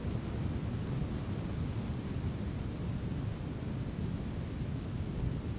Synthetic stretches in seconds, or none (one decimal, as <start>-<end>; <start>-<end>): none